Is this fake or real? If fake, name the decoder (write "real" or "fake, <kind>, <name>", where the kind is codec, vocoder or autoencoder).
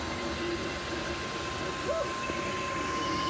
real